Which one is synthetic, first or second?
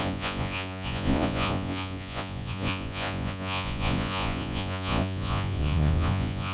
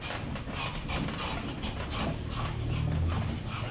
first